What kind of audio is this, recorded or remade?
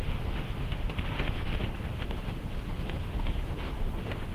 remade